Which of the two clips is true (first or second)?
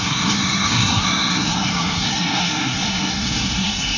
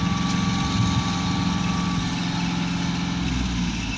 second